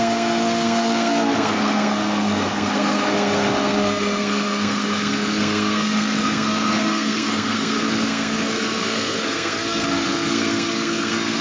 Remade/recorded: remade